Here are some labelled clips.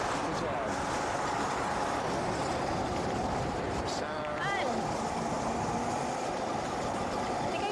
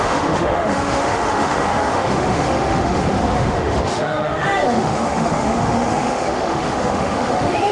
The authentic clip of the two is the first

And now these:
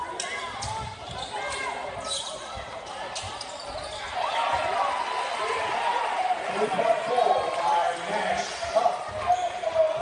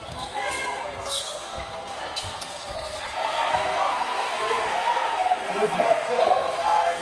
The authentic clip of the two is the first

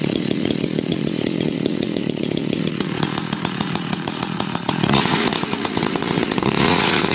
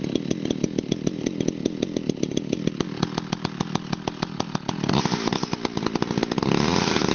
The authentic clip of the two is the second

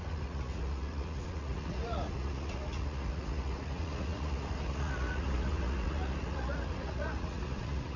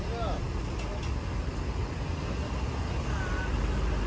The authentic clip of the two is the second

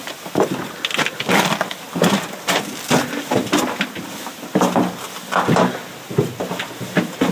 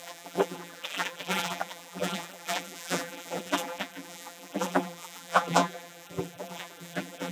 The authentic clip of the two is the first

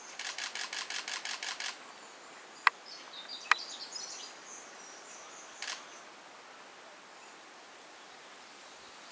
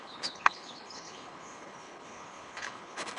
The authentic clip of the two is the first